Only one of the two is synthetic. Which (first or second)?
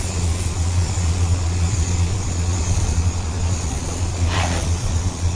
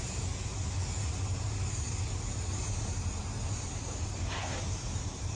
first